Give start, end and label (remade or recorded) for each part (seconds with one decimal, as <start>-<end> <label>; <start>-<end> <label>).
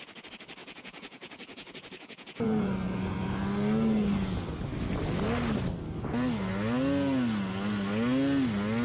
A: 0.0-0.6 recorded; 0.6-2.7 remade; 2.7-8.8 recorded